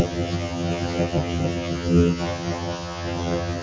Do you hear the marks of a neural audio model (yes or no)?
yes